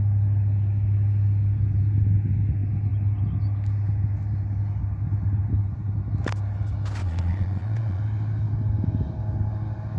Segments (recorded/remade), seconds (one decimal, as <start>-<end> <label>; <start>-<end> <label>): 0.0-7.0 recorded; 7.0-8.0 remade; 8.0-10.0 recorded